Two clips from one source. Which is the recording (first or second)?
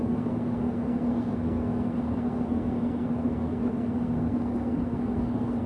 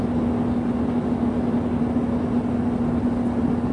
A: second